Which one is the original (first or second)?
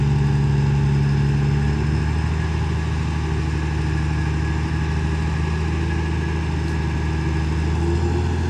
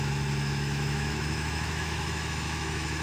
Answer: first